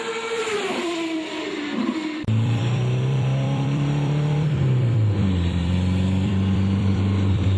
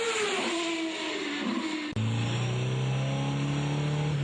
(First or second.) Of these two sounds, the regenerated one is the first